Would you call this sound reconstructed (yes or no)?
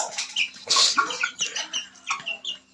no